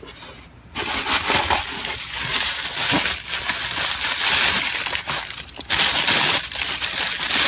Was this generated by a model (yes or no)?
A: no